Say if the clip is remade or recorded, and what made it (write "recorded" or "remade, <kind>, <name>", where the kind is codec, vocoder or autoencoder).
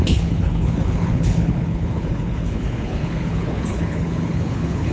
remade, codec, HILCodec